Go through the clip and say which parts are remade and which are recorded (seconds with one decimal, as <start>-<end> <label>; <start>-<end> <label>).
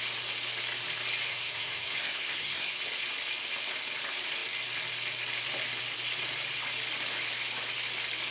0.0-1.3 recorded; 1.3-2.7 remade; 2.7-8.3 recorded